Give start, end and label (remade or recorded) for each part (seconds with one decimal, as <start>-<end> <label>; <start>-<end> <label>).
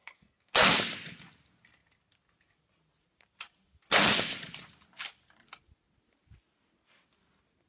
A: 0.0-0.8 remade; 0.8-7.7 recorded